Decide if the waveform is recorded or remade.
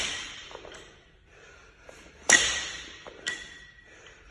remade